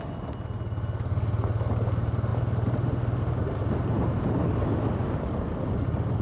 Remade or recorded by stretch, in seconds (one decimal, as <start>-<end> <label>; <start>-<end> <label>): 0.0-6.2 recorded